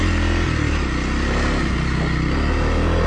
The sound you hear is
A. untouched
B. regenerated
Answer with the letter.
A